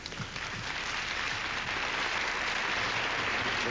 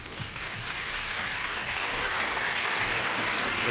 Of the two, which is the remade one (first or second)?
second